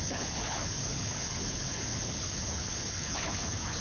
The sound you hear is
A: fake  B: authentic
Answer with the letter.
A